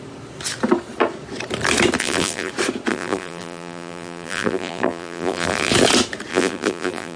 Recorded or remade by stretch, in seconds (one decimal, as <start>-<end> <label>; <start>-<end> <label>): 0.0-2.0 recorded; 2.0-2.5 remade; 2.5-2.9 recorded; 2.9-5.7 remade; 5.7-6.3 recorded; 6.3-7.2 remade